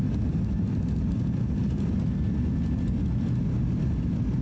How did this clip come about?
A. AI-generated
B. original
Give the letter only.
B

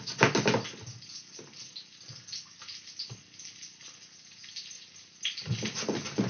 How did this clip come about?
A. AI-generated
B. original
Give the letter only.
B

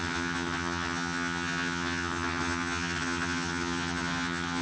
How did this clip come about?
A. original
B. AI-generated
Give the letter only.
B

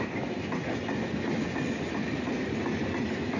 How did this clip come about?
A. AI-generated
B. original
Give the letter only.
B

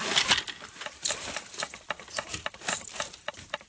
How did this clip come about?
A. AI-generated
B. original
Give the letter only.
B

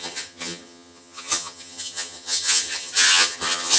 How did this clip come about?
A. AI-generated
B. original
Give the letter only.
A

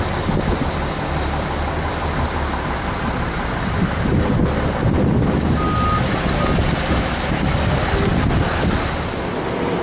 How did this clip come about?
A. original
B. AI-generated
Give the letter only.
A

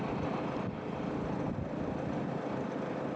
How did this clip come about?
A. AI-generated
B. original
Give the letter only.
B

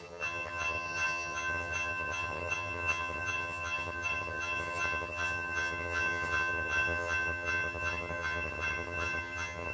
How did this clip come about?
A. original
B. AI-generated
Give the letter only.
B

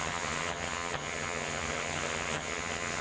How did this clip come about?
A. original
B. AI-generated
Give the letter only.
B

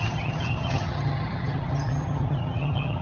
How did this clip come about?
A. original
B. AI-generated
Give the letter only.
B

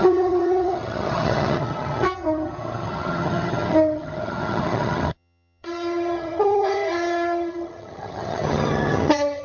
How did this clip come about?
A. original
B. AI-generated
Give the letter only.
B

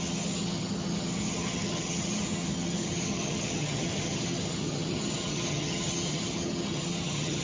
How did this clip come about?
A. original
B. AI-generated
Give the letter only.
B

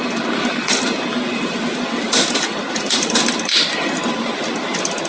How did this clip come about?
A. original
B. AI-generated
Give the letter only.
A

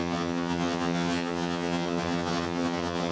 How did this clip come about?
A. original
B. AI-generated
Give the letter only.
B